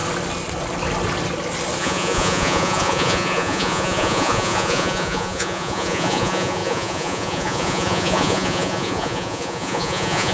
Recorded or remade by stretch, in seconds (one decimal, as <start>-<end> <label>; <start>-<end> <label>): 0.0-1.8 recorded; 1.8-10.3 remade